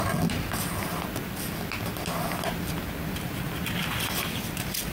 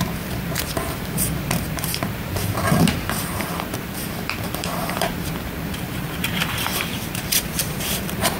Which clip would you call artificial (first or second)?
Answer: second